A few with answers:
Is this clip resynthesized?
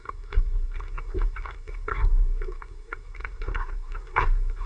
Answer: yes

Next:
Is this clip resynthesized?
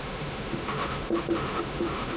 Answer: yes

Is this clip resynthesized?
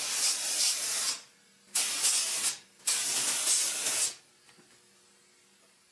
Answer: no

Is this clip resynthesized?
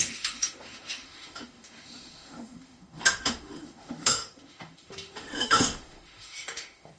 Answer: yes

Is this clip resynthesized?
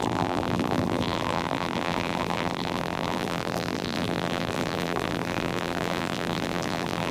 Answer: yes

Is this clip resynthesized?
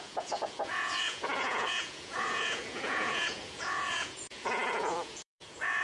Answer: yes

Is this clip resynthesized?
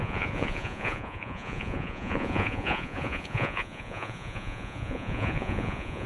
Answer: yes